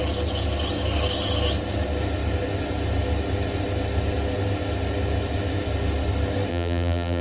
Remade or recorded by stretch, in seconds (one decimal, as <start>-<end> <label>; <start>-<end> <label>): 0.0-6.5 recorded; 6.5-7.2 remade